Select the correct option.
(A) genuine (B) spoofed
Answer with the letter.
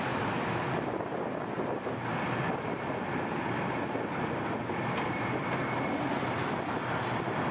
A